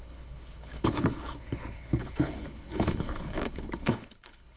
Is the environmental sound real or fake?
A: fake